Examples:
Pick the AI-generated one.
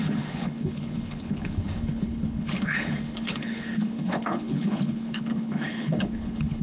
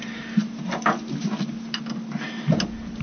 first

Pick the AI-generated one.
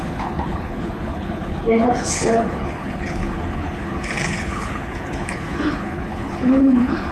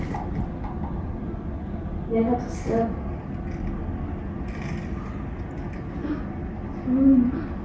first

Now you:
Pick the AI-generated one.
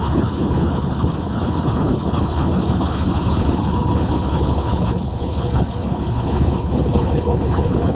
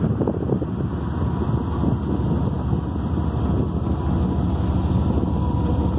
first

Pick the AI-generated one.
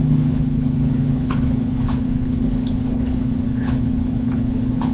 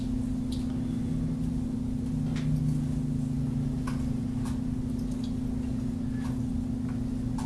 first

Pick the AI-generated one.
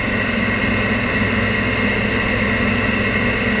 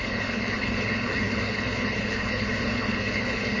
second